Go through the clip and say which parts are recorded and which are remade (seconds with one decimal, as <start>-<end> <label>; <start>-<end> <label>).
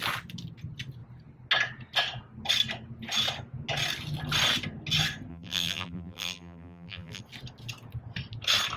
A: 0.0-5.3 recorded; 5.3-7.2 remade; 7.2-8.8 recorded